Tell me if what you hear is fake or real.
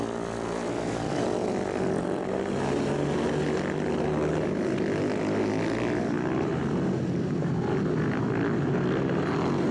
real